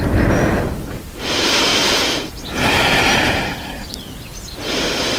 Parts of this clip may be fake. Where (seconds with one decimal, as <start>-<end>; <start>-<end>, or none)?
1.7-2.3